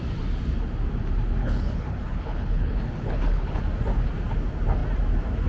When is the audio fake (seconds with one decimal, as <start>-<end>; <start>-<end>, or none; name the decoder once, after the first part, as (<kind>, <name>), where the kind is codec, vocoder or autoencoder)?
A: 1.4-3.6 (codec, HILCodec)